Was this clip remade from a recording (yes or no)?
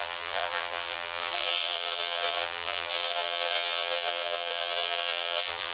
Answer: yes